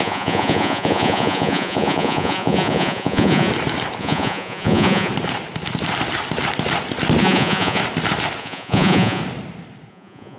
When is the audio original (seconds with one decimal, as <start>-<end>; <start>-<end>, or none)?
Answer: 3.5-4.0; 5.1-7.2; 7.8-8.4; 9.2-9.9